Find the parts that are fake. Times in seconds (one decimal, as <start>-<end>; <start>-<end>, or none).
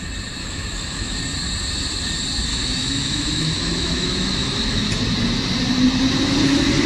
0.4-1.2; 2.5-4.9